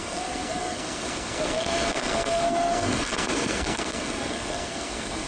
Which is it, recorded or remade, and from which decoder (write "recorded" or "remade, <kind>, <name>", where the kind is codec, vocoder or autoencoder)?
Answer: remade, codec, SNAC